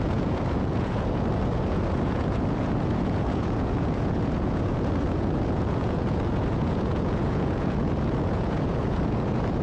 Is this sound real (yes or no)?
no